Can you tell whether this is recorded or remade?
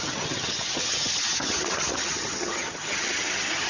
remade